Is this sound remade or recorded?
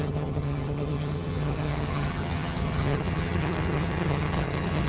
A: remade